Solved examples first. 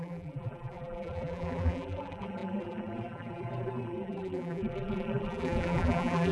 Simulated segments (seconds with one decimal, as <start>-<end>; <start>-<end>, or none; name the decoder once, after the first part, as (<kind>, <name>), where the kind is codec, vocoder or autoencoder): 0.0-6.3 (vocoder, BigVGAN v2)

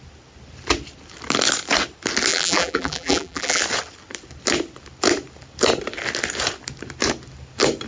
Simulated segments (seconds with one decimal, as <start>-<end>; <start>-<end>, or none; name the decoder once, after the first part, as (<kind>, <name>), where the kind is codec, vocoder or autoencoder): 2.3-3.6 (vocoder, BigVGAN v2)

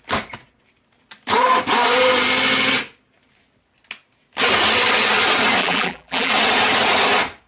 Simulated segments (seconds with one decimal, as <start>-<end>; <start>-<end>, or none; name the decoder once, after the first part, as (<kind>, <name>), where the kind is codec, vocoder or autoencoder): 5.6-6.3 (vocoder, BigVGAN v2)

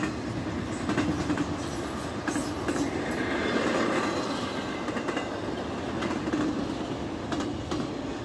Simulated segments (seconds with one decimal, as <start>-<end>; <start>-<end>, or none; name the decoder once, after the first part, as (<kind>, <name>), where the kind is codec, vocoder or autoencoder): 2.4-4.0 (vocoder, BigVGAN v2)